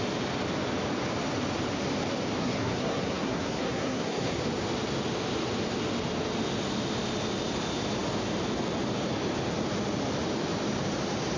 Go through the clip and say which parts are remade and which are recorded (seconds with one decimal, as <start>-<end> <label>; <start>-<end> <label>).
0.0-2.4 recorded; 2.4-4.4 remade; 4.4-11.4 recorded